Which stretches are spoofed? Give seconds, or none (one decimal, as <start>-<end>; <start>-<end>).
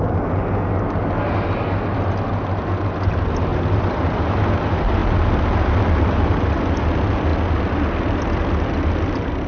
3.5-4.2